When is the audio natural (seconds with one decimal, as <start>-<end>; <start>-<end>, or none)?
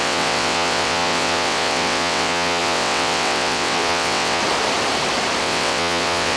4.4-5.4